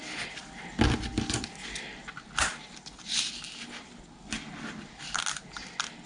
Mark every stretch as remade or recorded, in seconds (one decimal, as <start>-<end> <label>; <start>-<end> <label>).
0.0-6.1 recorded